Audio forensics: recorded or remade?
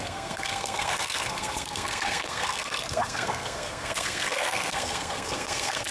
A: remade